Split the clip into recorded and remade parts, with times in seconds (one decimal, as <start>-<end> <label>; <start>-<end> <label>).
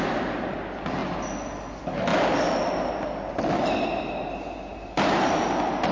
0.0-4.7 recorded; 4.7-5.4 remade; 5.4-5.9 recorded